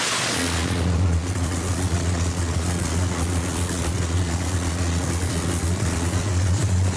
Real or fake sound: fake